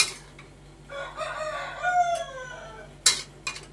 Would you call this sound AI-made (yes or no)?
no